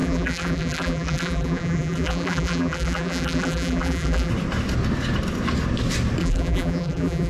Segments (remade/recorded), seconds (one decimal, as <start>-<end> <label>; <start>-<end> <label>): 0.0-4.3 remade; 4.3-6.2 recorded; 6.2-7.3 remade